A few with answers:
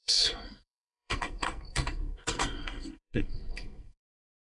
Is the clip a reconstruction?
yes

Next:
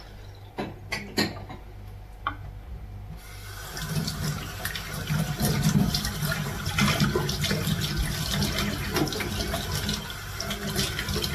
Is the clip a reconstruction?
no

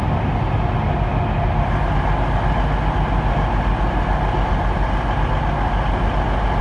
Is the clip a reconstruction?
no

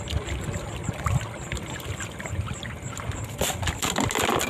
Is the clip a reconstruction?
no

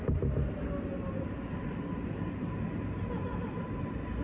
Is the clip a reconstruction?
no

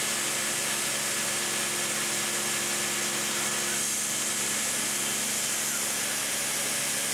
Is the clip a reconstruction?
no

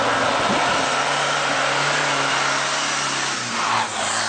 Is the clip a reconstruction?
no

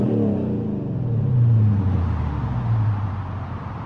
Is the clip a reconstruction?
no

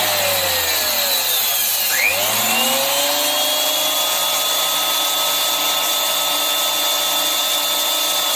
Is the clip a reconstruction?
no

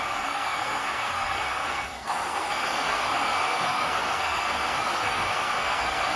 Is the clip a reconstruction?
yes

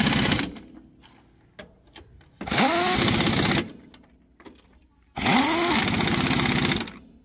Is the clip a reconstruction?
no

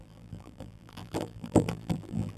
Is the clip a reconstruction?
yes